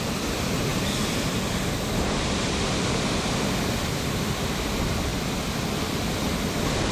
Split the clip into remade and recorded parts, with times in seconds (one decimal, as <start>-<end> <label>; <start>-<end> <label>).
0.0-6.9 recorded

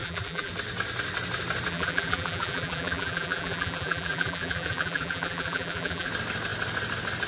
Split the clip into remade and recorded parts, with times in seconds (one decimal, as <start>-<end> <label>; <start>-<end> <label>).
0.0-0.5 remade; 0.5-1.7 recorded; 1.7-6.1 remade; 6.1-7.3 recorded

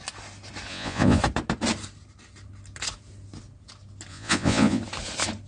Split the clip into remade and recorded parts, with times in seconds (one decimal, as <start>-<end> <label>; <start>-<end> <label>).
0.0-0.7 recorded; 0.7-1.2 remade; 1.2-4.1 recorded; 4.1-4.8 remade; 4.8-5.5 recorded

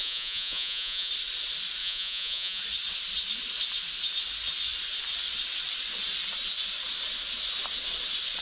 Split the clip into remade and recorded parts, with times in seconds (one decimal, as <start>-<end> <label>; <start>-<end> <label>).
0.0-1.1 remade; 1.1-1.8 recorded; 1.8-2.6 remade; 2.6-8.4 recorded

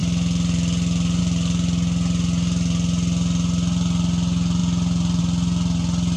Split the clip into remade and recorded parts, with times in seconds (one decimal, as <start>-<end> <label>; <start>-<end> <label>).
0.0-6.2 recorded

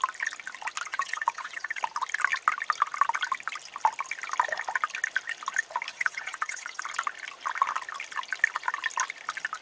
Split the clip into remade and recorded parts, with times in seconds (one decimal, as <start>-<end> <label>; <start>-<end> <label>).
0.0-0.9 recorded; 0.9-1.8 remade; 1.8-5.9 recorded; 5.9-6.8 remade; 6.8-9.6 recorded

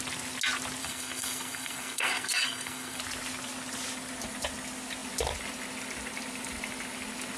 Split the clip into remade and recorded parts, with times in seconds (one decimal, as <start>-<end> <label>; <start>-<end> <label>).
0.0-0.8 recorded; 0.8-3.0 remade; 3.0-7.4 recorded